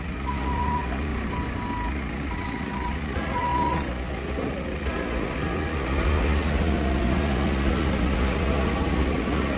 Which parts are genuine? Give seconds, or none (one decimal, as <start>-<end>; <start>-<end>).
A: 1.1-1.9